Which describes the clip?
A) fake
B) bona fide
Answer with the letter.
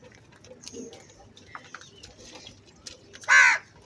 B